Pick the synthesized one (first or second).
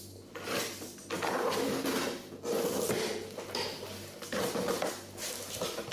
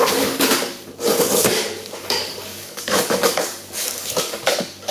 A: second